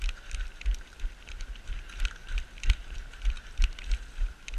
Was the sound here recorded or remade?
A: recorded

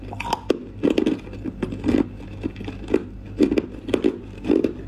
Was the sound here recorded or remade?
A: recorded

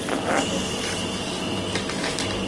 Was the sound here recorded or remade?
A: recorded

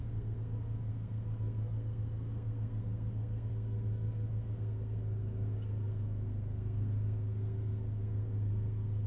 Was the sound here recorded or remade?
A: remade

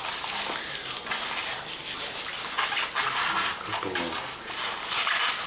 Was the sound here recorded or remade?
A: recorded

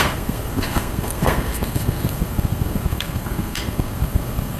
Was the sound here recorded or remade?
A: remade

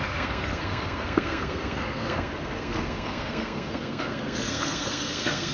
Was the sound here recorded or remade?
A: remade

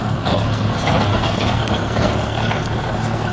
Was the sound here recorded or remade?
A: remade